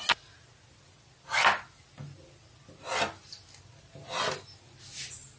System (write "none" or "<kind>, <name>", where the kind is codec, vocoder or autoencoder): none